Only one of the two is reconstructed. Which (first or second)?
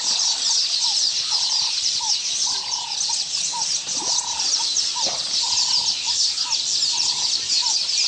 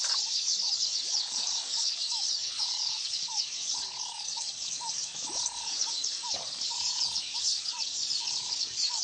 second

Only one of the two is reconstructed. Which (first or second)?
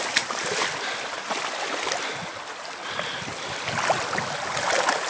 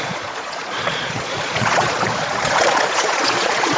second